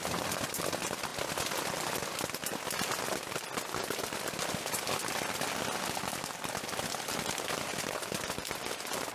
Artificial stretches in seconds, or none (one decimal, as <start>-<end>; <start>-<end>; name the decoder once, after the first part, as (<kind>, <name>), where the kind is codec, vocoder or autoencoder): none

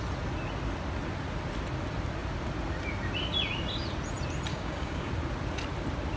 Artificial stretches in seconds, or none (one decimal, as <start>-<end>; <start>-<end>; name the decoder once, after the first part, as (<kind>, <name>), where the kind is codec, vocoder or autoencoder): 4.5-5.1 (codec, DAC)

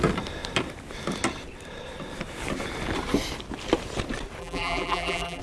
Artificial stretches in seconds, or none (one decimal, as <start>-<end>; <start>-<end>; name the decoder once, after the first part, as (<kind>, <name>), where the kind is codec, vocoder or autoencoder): 4.4-5.4 (vocoder, BigVGAN v2)

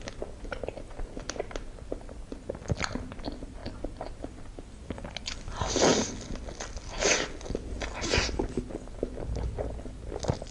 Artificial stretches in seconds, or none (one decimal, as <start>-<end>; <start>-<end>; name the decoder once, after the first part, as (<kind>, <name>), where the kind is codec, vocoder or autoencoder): none

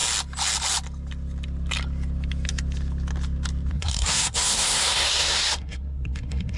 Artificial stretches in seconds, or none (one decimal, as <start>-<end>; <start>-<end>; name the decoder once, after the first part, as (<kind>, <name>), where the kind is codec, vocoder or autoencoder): 3.7-6.6 (codec, SNAC)

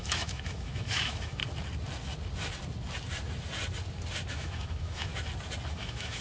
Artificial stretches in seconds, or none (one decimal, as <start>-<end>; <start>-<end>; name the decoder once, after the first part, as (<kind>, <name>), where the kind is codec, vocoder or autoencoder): 0.0-1.4 (autoencoder, DAC-VAE); 4.3-5.1; 5.7-6.2